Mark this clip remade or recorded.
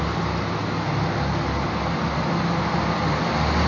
recorded